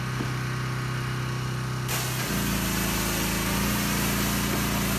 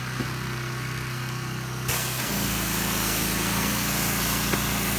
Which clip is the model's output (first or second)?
second